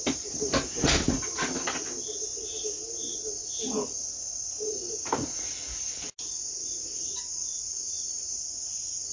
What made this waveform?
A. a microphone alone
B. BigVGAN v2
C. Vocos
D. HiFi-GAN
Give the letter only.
A